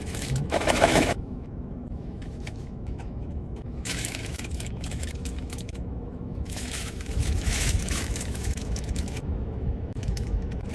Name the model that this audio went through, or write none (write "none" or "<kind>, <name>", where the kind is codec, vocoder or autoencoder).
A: autoencoder, DAC-VAE